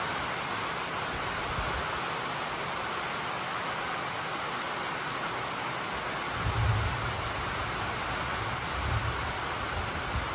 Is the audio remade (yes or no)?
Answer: no